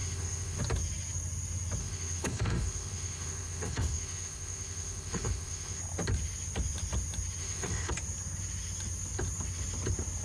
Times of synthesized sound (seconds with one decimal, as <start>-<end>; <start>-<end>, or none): 0.0-0.6; 1.8-5.8; 7.4-7.9